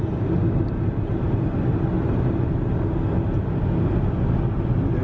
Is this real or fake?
real